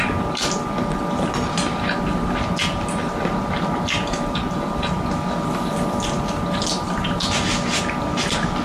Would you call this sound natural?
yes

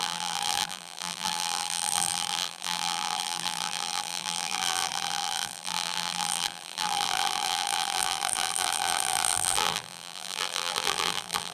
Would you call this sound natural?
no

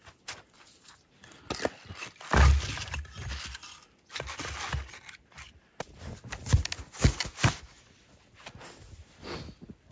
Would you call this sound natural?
yes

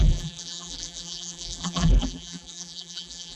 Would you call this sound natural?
no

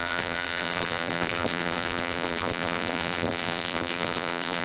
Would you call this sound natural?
no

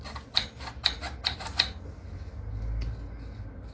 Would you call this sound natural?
yes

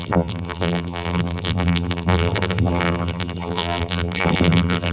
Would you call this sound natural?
no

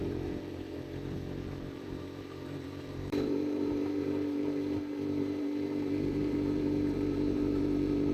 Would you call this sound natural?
no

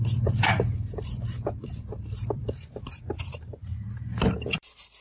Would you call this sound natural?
no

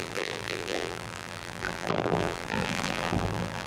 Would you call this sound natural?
no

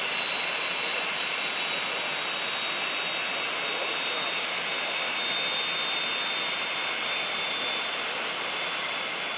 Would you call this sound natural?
yes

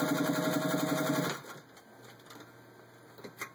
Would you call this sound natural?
yes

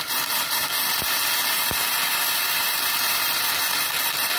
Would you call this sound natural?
no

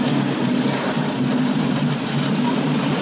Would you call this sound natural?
no